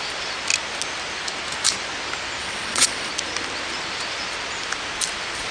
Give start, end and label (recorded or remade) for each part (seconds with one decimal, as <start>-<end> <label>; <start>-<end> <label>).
0.0-2.4 recorded; 2.4-3.1 remade; 3.1-5.5 recorded